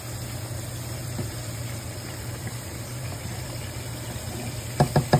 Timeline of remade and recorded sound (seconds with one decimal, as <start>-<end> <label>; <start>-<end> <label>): 0.0-1.0 recorded; 1.0-3.6 remade; 3.6-5.2 recorded

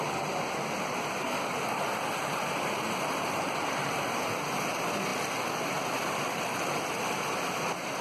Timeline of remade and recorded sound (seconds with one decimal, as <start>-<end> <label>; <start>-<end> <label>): 0.0-8.0 recorded

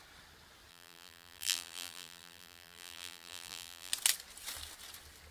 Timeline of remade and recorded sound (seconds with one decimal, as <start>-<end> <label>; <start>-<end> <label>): 0.0-0.7 recorded; 0.7-3.9 remade; 3.9-5.3 recorded